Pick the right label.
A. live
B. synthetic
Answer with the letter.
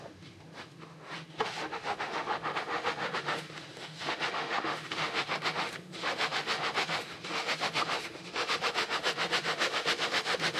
B